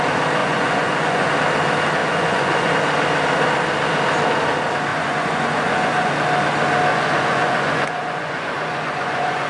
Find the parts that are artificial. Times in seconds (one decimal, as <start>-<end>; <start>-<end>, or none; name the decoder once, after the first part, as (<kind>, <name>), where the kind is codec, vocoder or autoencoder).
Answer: 0.4-1.3 (vocoder, Vocos); 2.0-2.7; 4.9-6.1; 6.9-9.5

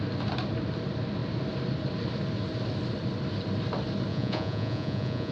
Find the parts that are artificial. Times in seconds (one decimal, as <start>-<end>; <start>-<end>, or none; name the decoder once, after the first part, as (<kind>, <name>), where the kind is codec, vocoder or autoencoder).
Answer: 4.1-5.3 (vocoder, Vocos)